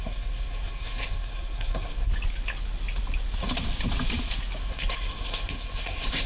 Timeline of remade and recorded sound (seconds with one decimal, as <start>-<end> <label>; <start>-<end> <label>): 0.0-2.1 remade; 2.1-4.6 recorded; 4.6-6.3 remade